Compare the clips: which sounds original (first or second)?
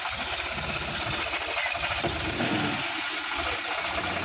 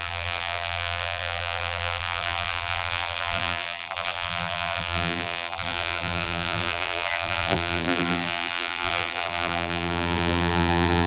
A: first